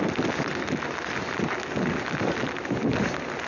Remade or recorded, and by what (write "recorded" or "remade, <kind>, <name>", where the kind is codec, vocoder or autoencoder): recorded